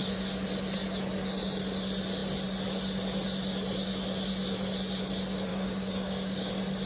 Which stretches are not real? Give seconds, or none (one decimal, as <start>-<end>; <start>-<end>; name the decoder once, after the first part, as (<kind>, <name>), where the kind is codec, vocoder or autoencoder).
5.5-6.5 (codec, DAC)